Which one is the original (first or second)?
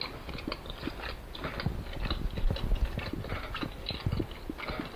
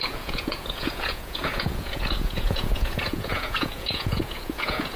first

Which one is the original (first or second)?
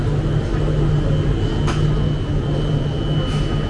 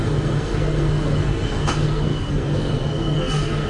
first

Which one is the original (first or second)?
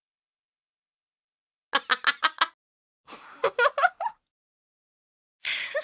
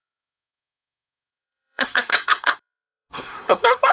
first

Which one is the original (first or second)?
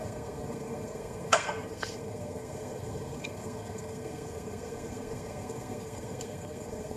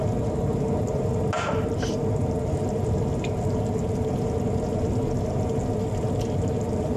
second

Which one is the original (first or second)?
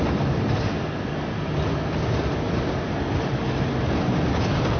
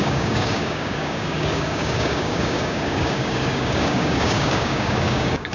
first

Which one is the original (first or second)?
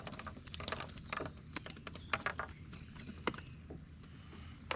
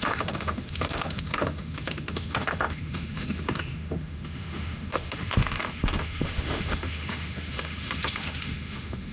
first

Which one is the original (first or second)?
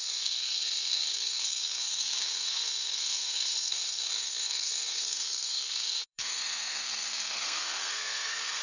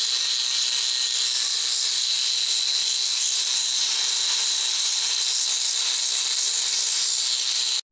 second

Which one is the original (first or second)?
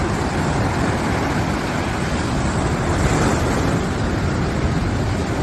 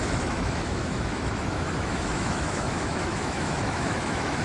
first